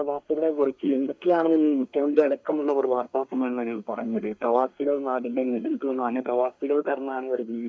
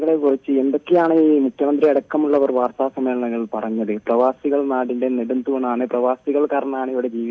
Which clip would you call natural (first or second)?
second